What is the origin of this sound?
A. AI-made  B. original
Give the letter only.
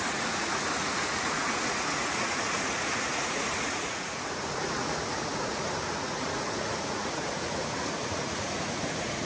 A